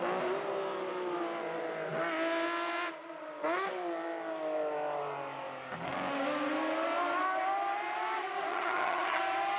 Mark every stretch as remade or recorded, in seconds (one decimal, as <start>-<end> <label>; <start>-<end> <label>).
0.0-8.5 recorded; 8.5-9.2 remade; 9.2-9.6 recorded